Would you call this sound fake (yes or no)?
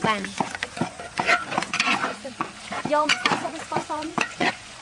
yes